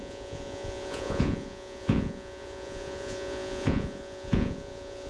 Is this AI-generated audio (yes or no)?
yes